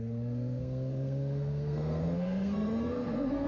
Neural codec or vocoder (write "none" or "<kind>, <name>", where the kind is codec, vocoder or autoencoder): codec, SNAC